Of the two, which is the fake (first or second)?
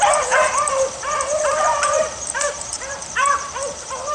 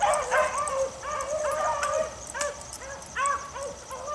first